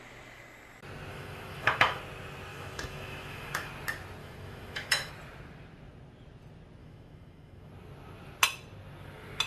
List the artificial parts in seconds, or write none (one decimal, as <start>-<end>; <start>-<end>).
1.1-2.0; 2.5-3.7; 4.2-5.1; 6.8-7.7